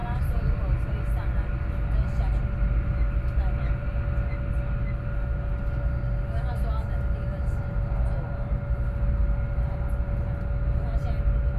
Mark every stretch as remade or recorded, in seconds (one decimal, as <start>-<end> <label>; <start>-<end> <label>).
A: 0.0-0.6 remade; 0.6-11.6 recorded